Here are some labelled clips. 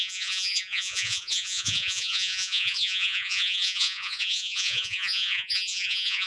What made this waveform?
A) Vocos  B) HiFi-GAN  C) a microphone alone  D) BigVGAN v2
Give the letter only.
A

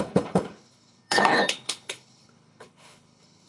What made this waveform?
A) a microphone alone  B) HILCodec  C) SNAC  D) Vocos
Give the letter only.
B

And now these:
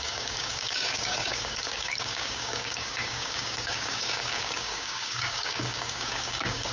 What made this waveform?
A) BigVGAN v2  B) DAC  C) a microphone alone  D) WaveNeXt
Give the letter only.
B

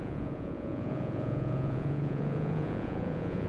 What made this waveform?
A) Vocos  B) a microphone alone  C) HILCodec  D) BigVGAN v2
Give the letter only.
A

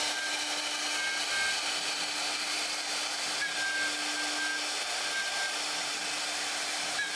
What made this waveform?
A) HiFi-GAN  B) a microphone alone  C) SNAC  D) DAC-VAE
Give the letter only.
B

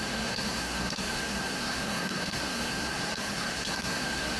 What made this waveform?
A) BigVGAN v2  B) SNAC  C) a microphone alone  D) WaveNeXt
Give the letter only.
B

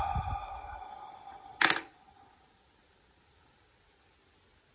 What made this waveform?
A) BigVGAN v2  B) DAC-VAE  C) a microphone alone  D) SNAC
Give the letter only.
C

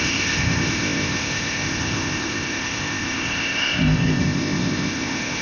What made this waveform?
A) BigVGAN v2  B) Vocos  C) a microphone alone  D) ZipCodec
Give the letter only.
D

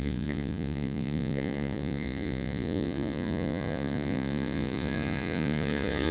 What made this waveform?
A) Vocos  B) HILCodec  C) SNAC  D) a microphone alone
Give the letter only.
A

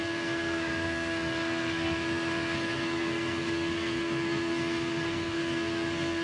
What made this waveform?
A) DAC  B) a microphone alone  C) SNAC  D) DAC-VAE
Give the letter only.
C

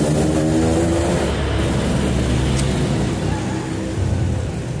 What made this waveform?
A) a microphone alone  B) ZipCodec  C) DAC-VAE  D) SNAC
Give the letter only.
A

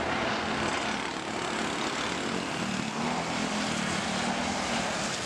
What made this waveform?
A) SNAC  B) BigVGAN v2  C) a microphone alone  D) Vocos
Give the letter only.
C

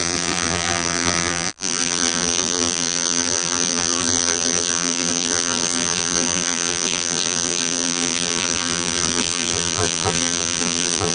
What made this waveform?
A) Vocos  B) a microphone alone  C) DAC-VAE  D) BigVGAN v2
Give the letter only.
D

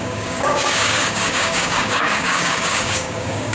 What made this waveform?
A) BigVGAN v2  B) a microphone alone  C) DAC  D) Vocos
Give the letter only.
C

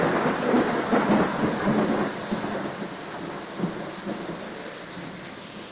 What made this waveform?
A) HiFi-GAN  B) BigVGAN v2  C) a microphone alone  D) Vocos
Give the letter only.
C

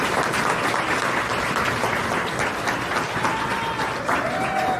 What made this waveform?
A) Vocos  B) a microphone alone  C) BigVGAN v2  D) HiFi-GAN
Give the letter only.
B